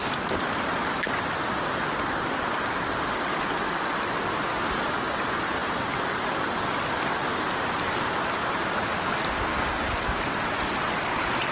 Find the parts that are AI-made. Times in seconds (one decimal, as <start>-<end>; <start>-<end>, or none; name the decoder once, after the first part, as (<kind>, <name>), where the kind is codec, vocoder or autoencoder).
4.5-5.1 (codec, DAC); 9.5-10.2